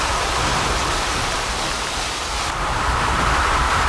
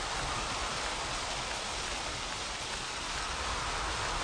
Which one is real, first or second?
second